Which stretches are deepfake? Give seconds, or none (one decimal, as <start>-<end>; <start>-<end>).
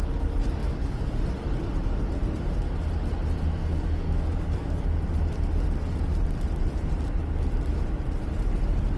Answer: 0.6-1.2; 3.6-4.8